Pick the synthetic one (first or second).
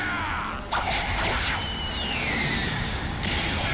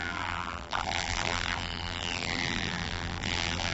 second